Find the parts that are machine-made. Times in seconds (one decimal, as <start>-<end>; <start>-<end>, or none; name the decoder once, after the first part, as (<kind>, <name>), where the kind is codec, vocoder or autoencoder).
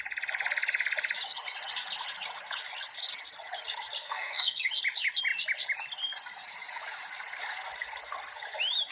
4.0-4.7 (codec, SNAC)